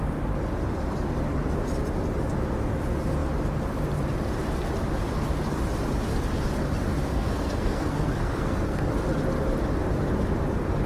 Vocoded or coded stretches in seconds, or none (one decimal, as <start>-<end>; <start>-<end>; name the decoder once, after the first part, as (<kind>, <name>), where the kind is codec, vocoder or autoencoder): 7.1-8.9 (codec, SNAC)